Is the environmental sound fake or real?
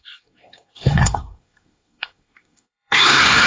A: fake